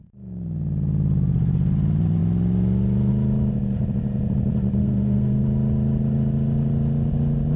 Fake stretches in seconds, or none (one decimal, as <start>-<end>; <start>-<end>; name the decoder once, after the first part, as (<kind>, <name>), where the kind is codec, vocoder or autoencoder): 4.8-5.4 (codec, SNAC)